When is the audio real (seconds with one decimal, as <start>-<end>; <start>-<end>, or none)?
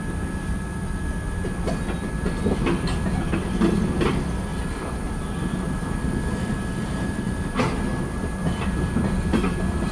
0.0-4.5; 6.5-9.9